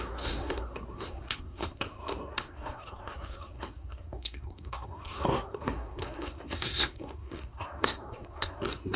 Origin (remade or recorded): remade